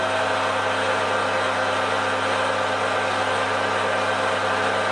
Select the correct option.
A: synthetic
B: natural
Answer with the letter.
B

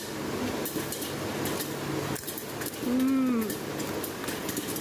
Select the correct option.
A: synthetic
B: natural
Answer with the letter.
B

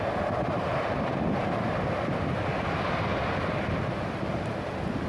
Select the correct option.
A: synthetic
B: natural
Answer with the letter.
B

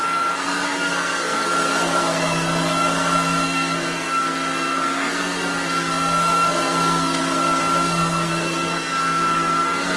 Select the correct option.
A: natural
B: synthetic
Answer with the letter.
B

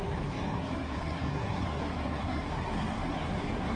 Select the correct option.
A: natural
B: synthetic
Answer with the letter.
B